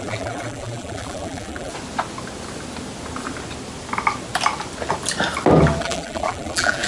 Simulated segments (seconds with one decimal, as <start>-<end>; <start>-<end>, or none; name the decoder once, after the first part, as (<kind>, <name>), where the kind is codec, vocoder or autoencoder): 0.0-1.7 (vocoder, BigVGAN v2); 5.8-6.9